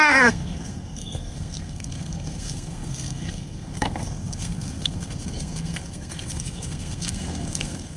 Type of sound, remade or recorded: remade